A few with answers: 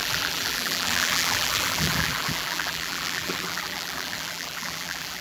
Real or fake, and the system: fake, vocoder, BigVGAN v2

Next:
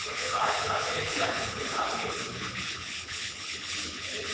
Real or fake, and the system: fake, codec, HILCodec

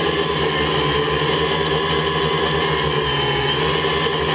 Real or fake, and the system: real